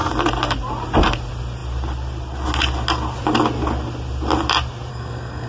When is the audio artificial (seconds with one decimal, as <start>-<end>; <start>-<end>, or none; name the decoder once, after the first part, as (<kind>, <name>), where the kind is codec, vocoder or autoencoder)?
4.9-5.5 (codec, SNAC)